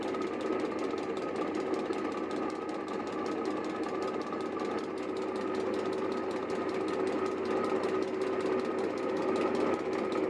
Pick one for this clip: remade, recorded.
recorded